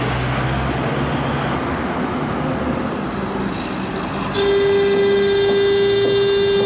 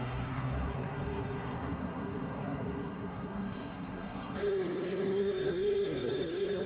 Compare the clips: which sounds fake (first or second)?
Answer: second